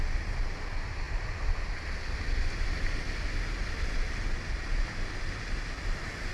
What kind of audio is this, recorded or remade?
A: recorded